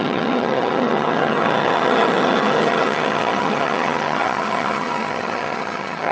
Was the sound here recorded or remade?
remade